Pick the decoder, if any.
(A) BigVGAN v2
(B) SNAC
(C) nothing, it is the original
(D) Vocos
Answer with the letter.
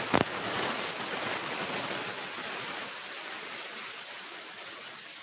C